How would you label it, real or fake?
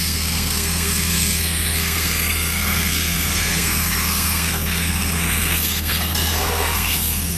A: fake